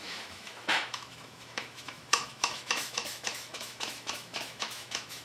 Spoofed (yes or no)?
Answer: yes